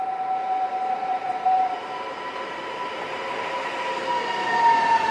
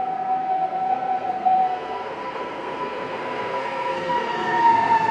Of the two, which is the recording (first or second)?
first